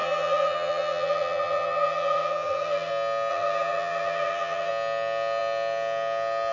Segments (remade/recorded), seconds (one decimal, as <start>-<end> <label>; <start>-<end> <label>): 0.0-2.9 remade; 2.9-3.3 recorded; 3.3-4.7 remade; 4.7-6.5 recorded